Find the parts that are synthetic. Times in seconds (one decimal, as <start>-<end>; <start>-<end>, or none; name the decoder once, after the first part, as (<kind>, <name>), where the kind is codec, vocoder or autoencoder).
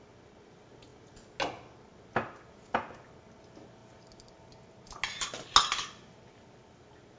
none